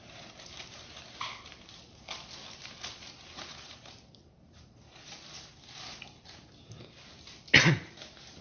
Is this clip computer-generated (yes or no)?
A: no